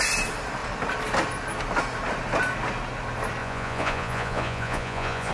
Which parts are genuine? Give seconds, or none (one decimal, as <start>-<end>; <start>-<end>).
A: 0.0-3.4